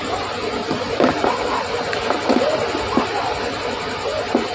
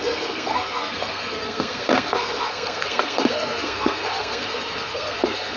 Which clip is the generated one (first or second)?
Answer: second